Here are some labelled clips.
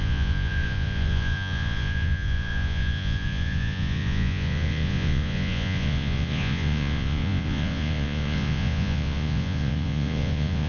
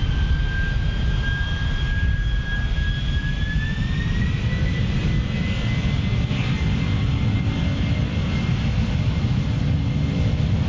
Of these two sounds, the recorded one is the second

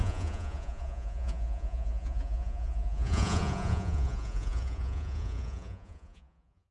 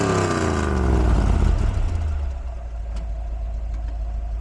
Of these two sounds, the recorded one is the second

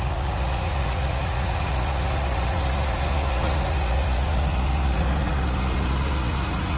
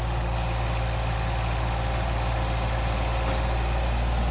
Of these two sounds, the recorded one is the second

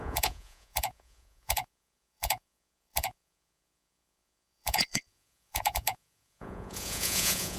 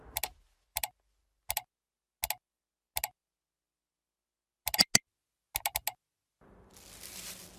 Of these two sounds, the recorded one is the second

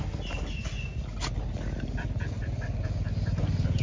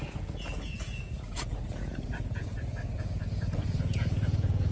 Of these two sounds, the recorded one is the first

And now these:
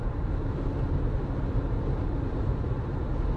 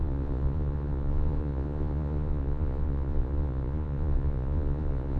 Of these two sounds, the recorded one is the first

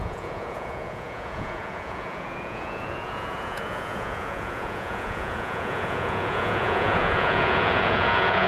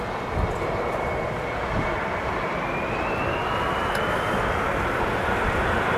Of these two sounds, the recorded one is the second